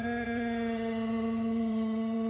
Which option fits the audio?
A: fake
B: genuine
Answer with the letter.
A